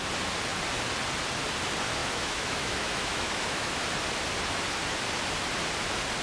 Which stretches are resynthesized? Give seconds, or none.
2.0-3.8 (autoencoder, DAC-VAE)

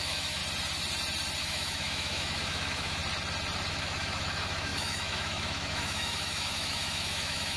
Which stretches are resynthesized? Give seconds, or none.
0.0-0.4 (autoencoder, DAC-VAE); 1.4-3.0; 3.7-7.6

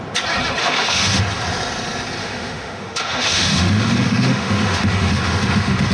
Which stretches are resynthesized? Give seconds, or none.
0.6-1.2 (autoencoder, DAC-VAE); 2.2-5.9

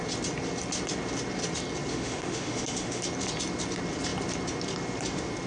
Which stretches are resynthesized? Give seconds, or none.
1.9-3.0 (autoencoder, DAC-VAE)

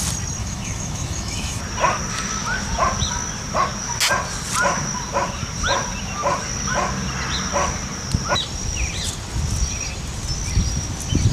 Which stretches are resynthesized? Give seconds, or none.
0.4-1.6 (autoencoder, DAC-VAE)

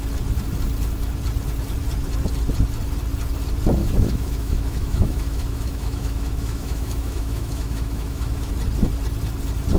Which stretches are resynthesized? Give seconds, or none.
3.8-8.5 (autoencoder, DAC-VAE)

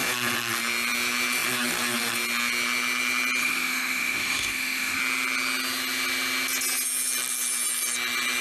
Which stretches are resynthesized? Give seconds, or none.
3.4-5.0 (autoencoder, DAC-VAE)

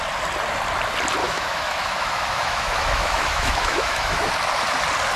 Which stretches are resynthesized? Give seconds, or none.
1.2-4.3 (autoencoder, DAC-VAE)